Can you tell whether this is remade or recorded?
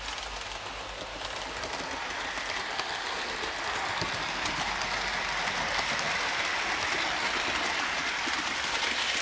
recorded